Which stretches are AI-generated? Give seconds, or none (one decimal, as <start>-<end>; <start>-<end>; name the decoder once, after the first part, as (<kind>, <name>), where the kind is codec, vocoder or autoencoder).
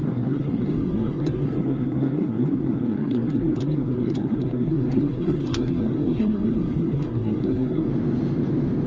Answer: 0.0-7.9 (codec, SNAC)